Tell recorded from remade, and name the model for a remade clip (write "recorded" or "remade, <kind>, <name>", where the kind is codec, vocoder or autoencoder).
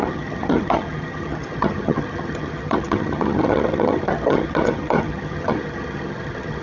remade, vocoder, HiFi-GAN